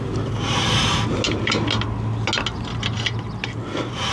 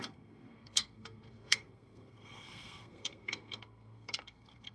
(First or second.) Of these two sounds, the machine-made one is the second